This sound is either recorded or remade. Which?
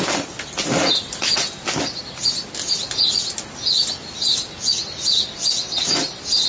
recorded